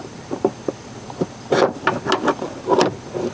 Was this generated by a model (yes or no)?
no